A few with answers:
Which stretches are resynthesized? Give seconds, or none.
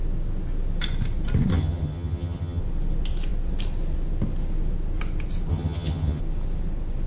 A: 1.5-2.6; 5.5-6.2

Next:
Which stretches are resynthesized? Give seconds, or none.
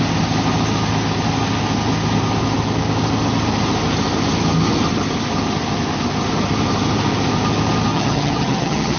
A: 7.9-9.0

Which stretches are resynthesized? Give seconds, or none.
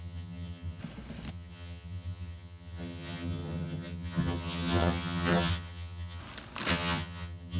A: 0.0-0.8; 1.3-6.2; 6.7-7.6